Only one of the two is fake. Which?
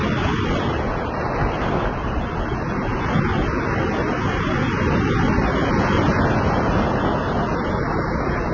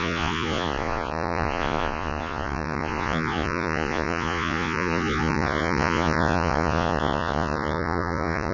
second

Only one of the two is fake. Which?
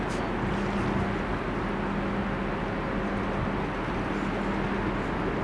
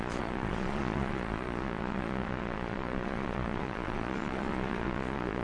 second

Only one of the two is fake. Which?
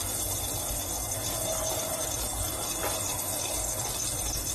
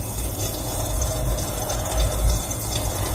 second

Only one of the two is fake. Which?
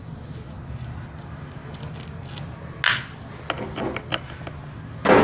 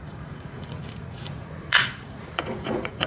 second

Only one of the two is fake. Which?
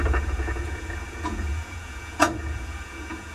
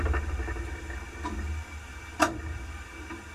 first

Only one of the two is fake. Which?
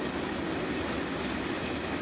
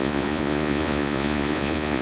second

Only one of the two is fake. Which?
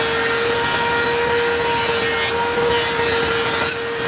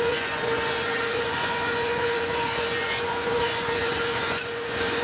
second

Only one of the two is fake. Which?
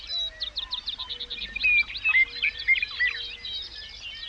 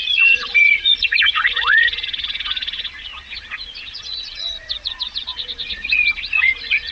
second